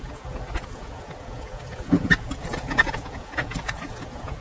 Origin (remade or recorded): remade